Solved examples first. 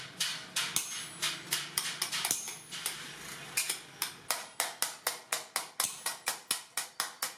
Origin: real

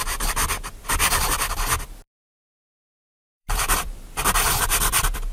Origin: fake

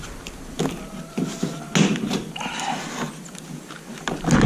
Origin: real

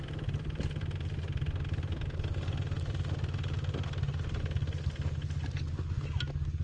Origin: real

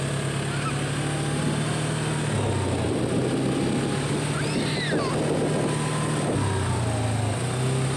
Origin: real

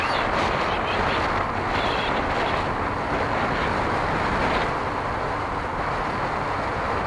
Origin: real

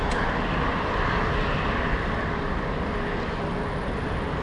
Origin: real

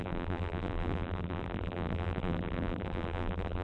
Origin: fake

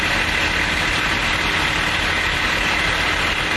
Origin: real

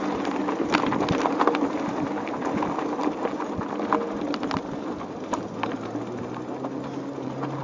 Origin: real